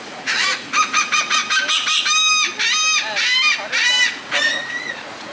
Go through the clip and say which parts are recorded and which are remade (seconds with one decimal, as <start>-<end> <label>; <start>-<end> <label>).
0.0-1.4 remade; 1.4-4.0 recorded; 4.0-5.3 remade